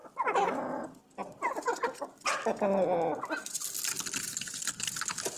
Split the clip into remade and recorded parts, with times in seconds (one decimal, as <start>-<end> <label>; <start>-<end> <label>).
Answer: 0.0-5.4 recorded